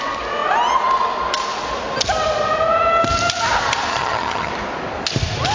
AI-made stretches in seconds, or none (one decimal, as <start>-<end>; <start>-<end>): 3.9-4.5